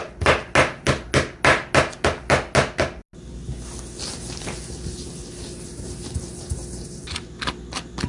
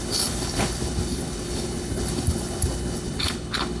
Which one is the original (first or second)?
first